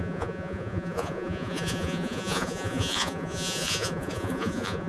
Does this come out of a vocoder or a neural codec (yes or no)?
yes